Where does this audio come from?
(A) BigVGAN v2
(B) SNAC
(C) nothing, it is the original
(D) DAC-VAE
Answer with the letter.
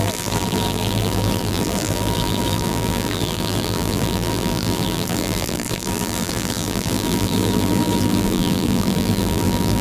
A